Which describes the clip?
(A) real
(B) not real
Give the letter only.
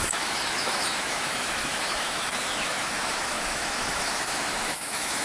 B